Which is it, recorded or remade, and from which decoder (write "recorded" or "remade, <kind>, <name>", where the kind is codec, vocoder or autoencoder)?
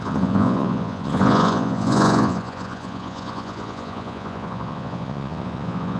remade, vocoder, Vocos